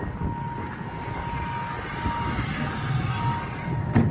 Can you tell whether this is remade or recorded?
recorded